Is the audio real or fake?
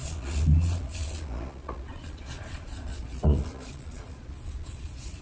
fake